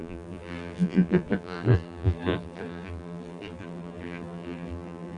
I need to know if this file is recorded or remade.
remade